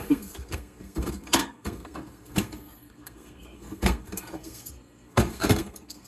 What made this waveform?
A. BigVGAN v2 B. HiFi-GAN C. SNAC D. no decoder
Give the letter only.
C